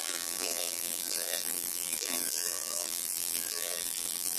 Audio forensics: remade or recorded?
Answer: remade